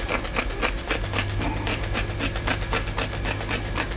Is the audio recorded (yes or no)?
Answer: yes